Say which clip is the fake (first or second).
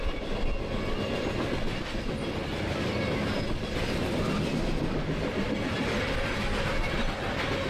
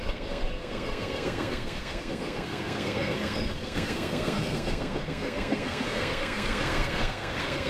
second